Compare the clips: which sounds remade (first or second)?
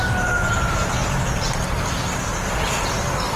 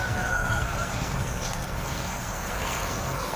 second